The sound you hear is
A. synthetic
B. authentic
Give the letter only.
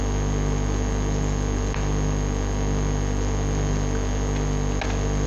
B